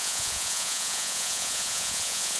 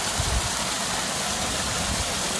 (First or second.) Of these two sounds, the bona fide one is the second